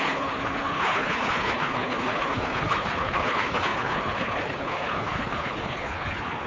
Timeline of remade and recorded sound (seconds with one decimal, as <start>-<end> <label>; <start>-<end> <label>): 0.0-6.5 remade